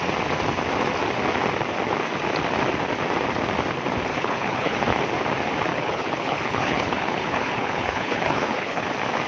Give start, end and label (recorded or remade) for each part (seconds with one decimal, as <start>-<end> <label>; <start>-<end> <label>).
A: 0.0-4.1 recorded; 4.1-4.8 remade; 4.8-5.7 recorded; 5.7-8.9 remade; 8.9-9.3 recorded